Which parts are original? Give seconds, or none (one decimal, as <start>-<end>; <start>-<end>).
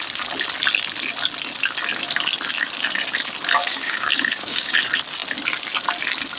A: 0.0-3.6; 4.8-6.4